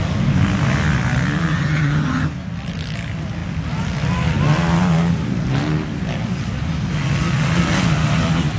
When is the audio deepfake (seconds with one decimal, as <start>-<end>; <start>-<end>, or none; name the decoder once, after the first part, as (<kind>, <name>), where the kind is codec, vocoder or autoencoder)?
1.5-2.3 (vocoder, HiFi-GAN)